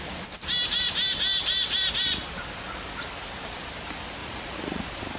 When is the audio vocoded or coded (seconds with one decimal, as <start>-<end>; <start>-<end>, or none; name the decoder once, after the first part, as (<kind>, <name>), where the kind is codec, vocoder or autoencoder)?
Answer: 4.2-4.8 (vocoder, Vocos)